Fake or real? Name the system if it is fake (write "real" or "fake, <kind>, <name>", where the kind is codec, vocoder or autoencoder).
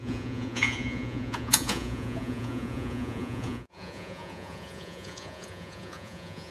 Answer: fake, vocoder, Vocos